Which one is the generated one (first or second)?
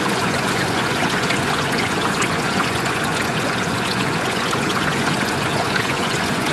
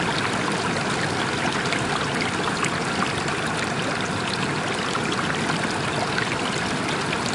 first